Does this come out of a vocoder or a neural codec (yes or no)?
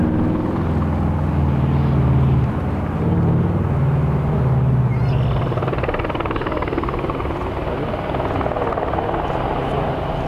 no